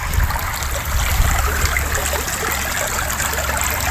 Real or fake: real